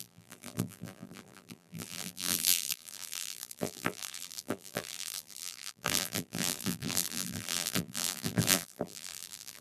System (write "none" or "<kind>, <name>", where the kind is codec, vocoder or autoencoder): vocoder, BigVGAN v2